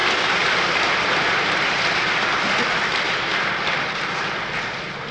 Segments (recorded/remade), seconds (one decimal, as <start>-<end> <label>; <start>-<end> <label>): 0.0-5.1 recorded